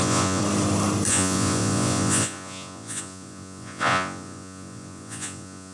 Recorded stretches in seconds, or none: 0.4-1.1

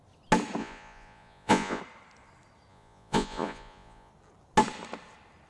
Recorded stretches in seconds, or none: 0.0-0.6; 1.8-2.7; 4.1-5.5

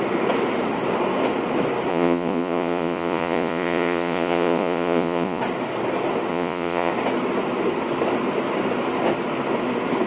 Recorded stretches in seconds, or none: 0.0-1.9; 5.4-6.3; 6.9-10.1

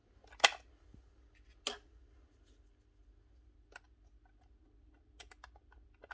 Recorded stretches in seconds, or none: 0.0-6.1